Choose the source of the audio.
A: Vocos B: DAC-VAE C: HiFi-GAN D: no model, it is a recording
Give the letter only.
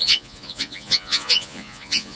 A